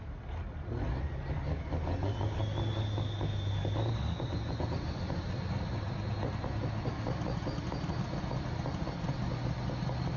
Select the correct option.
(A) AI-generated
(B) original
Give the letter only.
B